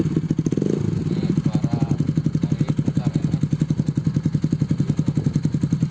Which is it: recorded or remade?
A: recorded